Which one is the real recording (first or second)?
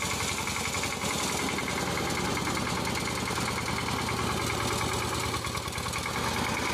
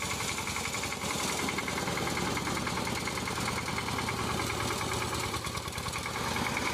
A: first